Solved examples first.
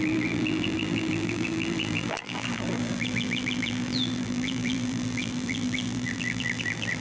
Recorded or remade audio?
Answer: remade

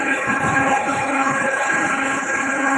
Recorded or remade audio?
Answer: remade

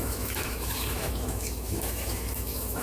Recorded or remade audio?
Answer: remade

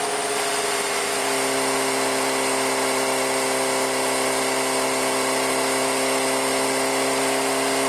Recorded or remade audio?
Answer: recorded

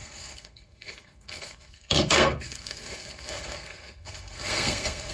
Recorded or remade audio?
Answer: remade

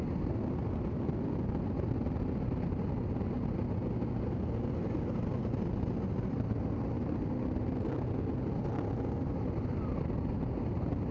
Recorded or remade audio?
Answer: recorded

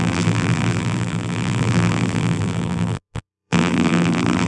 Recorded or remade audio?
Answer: remade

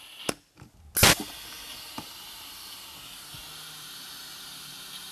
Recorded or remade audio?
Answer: recorded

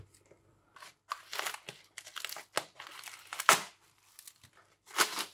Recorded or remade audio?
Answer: recorded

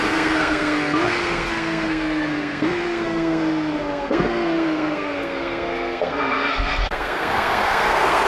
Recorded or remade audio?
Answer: remade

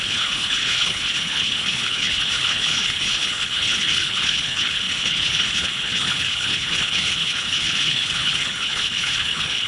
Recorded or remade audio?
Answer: remade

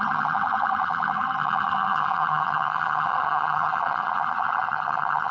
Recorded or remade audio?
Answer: remade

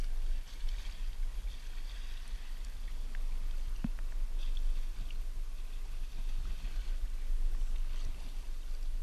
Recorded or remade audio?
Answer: recorded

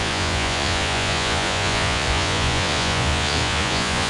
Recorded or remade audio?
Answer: remade